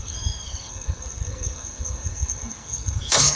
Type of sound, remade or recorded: remade